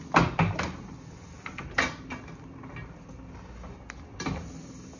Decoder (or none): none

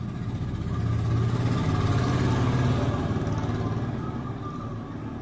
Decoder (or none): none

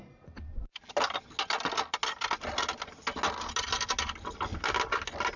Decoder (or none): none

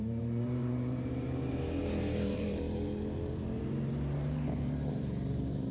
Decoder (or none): vocoder, BigVGAN v2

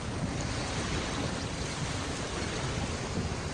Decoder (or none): none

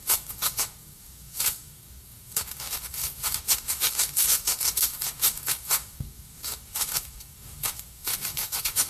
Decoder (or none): codec, DAC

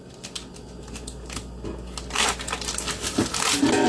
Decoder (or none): none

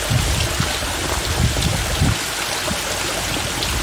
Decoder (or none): none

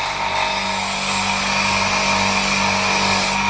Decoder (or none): none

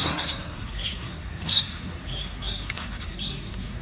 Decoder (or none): codec, SNAC